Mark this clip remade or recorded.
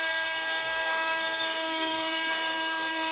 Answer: remade